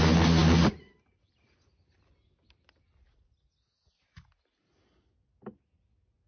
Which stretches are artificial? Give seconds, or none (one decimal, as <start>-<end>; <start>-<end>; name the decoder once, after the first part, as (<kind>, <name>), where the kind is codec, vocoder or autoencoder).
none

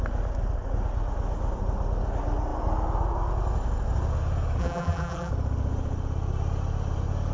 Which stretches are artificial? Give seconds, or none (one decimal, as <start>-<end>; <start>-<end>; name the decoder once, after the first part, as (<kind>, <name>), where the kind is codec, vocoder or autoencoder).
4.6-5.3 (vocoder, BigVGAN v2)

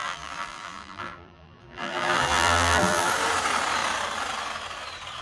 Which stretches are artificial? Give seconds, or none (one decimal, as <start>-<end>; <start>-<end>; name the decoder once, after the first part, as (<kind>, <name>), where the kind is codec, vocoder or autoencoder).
0.0-3.1 (vocoder, BigVGAN v2)

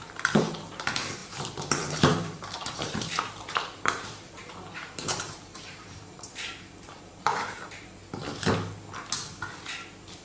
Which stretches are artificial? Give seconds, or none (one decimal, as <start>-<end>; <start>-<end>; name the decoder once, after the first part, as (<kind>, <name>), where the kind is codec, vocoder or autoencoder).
0.0-8.0 (vocoder, BigVGAN v2)

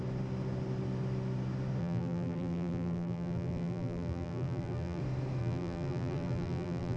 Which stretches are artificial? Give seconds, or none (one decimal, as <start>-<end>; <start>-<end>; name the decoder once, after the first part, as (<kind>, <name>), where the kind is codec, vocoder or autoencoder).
1.8-5.0 (vocoder, BigVGAN v2); 5.4-7.0

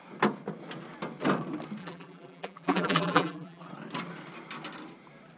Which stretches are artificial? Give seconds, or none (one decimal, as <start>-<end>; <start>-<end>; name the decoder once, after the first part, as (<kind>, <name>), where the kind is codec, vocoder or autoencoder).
1.8-3.7 (vocoder, BigVGAN v2)